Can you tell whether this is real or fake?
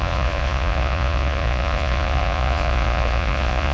fake